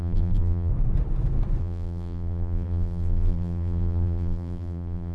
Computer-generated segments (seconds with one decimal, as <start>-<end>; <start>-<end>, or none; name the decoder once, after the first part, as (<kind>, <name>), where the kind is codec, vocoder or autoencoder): 0.0-0.7 (vocoder, BigVGAN v2); 1.6-5.1